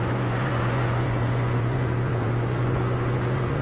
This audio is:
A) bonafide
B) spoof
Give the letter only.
B